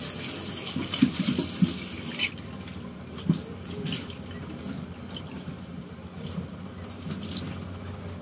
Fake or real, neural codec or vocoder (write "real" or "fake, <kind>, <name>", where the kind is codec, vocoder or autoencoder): real